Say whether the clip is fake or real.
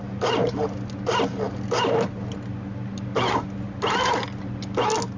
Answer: real